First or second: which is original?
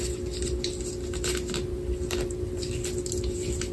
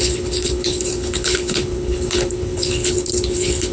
first